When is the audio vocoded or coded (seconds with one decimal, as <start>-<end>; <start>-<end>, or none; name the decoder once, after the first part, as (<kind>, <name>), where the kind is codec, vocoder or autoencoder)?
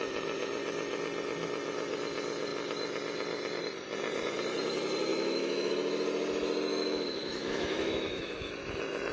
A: 5.1-5.7 (autoencoder, DAC-VAE); 6.7-8.5